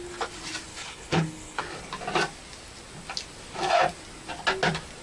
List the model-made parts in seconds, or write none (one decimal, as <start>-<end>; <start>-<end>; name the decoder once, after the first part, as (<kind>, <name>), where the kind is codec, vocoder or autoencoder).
0.7-1.6 (codec, HILCodec)